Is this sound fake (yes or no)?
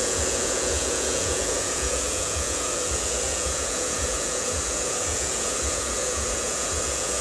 yes